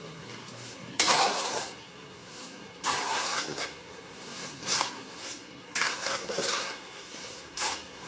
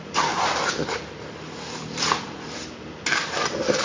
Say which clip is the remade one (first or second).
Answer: first